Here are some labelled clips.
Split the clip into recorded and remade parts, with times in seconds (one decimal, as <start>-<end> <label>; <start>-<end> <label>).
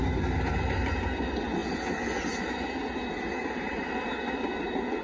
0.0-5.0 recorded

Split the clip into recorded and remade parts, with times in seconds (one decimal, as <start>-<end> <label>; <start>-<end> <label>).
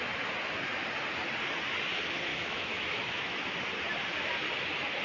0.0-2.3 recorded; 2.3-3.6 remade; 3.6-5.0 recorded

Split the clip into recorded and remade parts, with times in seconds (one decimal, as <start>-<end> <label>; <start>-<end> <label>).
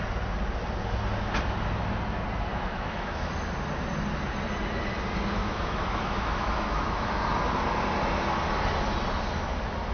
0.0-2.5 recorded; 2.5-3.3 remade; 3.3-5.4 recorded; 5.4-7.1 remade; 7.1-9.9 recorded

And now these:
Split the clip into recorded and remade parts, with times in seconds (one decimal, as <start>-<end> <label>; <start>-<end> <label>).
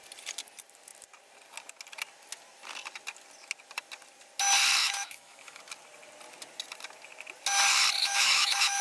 0.0-4.8 recorded; 4.8-5.6 remade; 5.6-8.0 recorded; 8.0-8.8 remade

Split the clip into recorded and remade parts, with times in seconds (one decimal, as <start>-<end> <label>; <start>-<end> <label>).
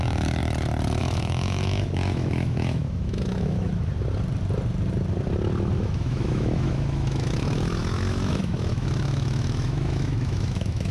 0.0-0.4 remade; 0.4-1.0 recorded; 1.0-3.7 remade; 3.7-5.8 recorded; 5.8-10.9 remade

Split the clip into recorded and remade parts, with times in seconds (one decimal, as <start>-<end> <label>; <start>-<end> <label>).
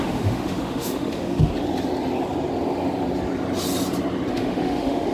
0.0-1.5 remade; 1.5-4.3 recorded; 4.3-5.1 remade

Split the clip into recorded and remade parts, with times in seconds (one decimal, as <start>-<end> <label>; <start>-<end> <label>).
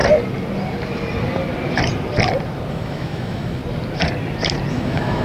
0.0-2.7 recorded; 2.7-3.6 remade; 3.6-4.7 recorded; 4.7-5.2 remade